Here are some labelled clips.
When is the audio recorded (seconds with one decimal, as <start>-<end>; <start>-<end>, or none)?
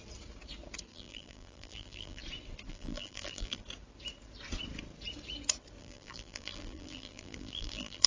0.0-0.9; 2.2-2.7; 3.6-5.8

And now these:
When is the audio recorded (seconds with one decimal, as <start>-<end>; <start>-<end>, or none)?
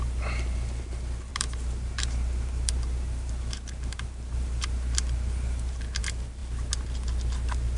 0.0-1.3; 6.0-7.8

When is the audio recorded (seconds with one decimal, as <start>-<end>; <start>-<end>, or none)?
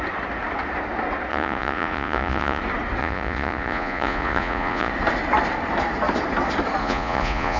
0.0-1.3; 2.6-3.0; 4.9-6.8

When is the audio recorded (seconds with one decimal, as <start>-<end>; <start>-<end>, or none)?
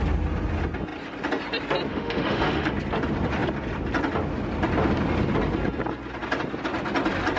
0.0-1.9; 2.7-7.4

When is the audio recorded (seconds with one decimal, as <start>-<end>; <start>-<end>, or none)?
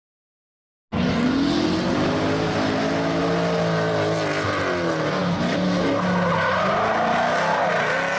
0.0-8.2